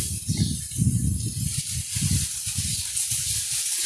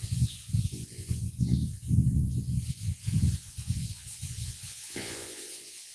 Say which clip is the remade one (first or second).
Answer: second